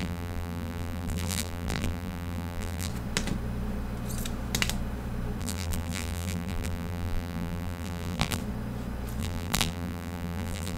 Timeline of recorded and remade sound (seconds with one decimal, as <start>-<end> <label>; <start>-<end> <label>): 0.0-2.9 remade; 2.9-5.4 recorded; 5.4-8.4 remade; 8.4-9.2 recorded; 9.2-10.8 remade